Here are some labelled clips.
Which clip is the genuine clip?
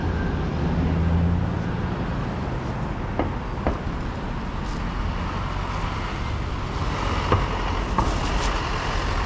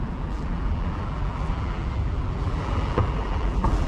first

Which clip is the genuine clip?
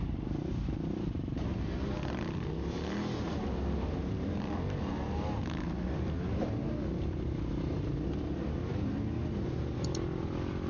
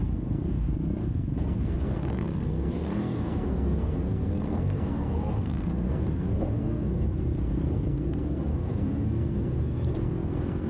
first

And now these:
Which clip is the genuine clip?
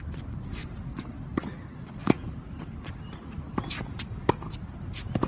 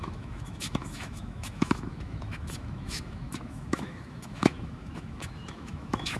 first